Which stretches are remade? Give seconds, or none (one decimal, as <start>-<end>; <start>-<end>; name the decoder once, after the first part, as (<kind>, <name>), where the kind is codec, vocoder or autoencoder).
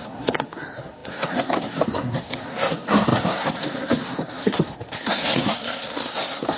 0.0-6.6 (codec, SNAC)